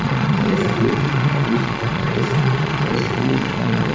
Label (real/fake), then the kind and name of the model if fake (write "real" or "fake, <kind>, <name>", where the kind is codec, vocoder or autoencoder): fake, vocoder, Vocos